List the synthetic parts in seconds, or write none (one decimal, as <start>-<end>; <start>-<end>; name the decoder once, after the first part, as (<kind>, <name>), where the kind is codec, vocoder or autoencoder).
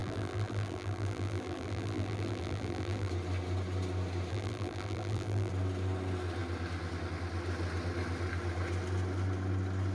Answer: 0.0-3.1 (vocoder, BigVGAN v2); 4.3-5.5